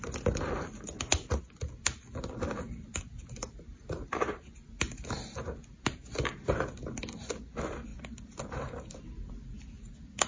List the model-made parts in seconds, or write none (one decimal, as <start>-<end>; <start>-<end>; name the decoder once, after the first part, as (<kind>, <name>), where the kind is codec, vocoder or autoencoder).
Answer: none